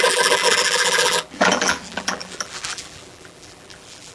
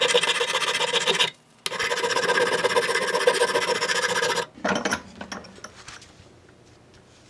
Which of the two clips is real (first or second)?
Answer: second